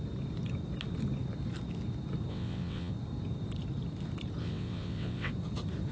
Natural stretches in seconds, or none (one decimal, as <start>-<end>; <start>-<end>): 0.0-2.3; 2.9-4.4; 5.3-5.9